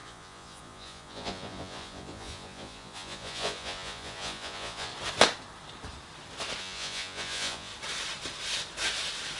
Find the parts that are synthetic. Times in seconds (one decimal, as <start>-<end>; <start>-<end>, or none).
0.0-4.9; 6.6-7.7